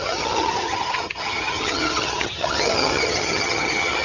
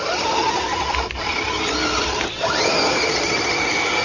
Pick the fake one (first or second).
first